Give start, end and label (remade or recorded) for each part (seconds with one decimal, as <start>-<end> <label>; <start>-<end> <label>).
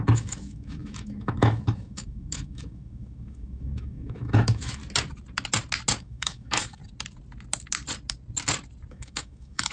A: 0.0-4.8 remade; 4.8-6.0 recorded; 6.0-6.8 remade; 6.8-8.9 recorded; 8.9-9.7 remade